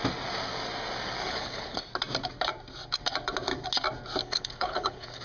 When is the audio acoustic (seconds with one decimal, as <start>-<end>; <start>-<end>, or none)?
0.0-1.2; 1.8-4.2